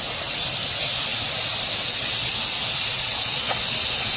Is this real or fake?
real